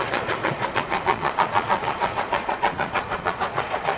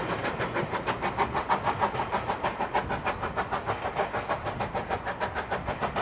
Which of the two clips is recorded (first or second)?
second